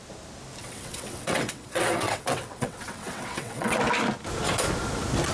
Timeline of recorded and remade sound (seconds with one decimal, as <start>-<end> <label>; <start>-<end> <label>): 0.0-0.6 recorded; 0.6-3.8 remade; 3.8-5.3 recorded